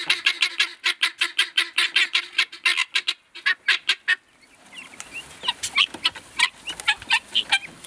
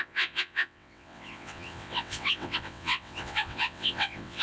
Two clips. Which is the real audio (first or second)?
first